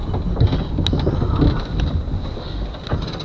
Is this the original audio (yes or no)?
yes